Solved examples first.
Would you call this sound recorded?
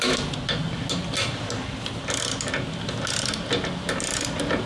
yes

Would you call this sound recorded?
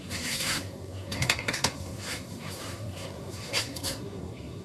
no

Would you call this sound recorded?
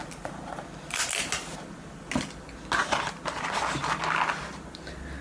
yes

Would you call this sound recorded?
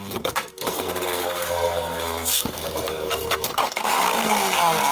no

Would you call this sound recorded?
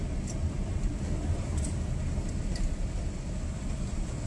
yes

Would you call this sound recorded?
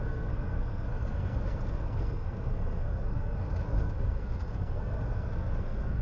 no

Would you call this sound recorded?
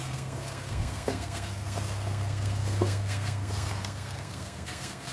no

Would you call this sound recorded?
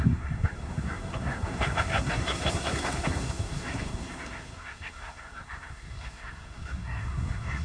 no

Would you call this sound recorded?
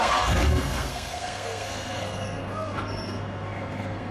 no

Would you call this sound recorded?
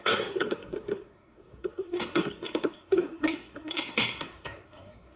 no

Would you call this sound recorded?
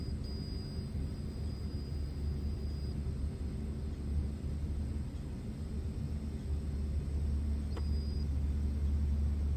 yes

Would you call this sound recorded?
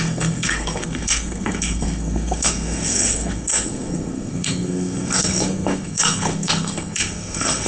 no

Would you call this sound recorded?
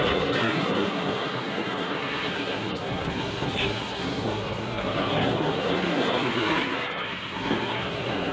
no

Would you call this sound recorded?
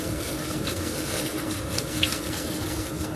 no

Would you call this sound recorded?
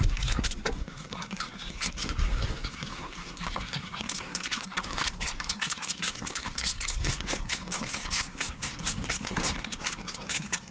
no